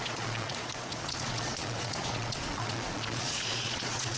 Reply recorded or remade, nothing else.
remade